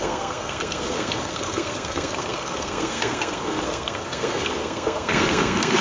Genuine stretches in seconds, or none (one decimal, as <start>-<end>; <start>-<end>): none